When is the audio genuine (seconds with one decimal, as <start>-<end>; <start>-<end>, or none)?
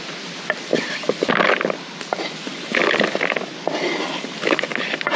0.0-5.2